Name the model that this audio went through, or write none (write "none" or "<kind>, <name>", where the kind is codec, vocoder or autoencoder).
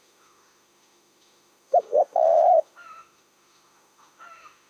autoencoder, DAC-VAE